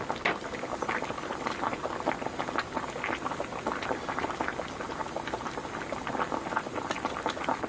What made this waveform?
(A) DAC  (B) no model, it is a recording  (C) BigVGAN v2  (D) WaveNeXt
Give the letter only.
B